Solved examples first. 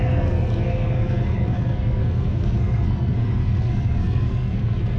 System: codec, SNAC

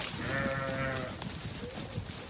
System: none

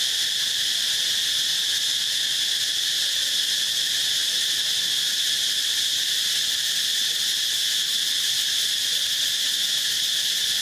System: none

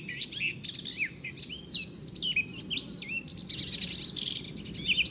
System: none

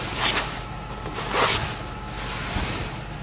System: none